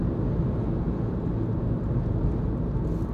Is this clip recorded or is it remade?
recorded